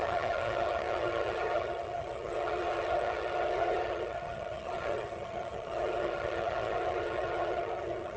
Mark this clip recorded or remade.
remade